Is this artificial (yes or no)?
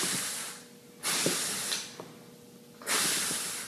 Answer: no